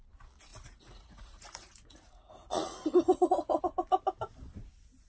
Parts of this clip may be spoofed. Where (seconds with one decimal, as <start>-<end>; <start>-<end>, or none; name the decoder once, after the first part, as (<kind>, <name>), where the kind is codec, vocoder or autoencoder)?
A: 0.5-3.6 (vocoder, Vocos)